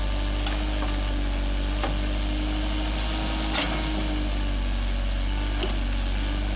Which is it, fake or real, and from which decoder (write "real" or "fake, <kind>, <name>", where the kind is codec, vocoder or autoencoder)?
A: real